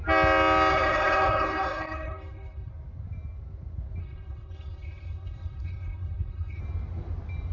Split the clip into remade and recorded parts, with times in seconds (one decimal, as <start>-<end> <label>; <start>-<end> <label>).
0.0-0.7 recorded; 0.7-2.7 remade; 2.7-4.0 recorded; 4.0-6.6 remade; 6.6-7.5 recorded